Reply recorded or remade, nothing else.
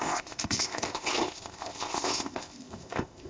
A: remade